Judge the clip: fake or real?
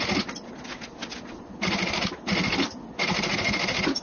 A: real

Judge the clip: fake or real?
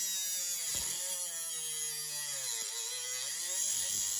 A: real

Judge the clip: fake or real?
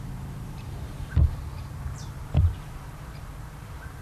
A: fake